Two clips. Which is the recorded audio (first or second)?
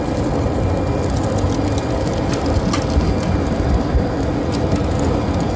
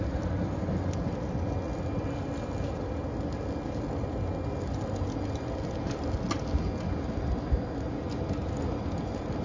second